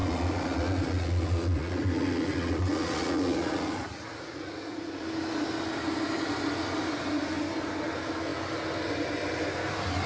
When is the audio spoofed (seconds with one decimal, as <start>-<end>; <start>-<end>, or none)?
0.0-5.0